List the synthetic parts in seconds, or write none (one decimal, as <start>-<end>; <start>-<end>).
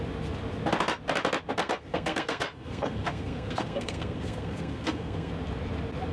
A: 1.6-5.3